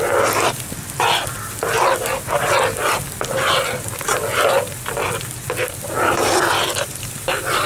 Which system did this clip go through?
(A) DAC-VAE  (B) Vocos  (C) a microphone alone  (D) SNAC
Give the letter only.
C